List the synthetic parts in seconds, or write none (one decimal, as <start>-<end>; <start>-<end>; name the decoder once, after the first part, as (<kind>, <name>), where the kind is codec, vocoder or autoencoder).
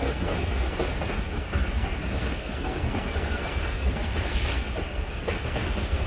0.0-6.1 (codec, SNAC)